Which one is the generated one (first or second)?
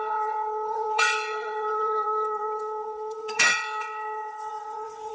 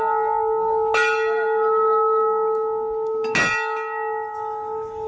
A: first